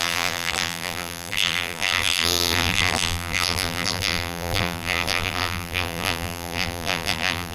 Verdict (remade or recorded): remade